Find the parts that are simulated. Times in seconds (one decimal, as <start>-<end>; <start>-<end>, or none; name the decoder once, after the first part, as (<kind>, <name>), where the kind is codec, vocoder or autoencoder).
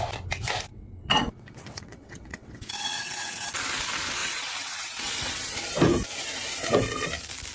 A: 0.7-3.5 (vocoder, WaveNeXt); 4.2-5.3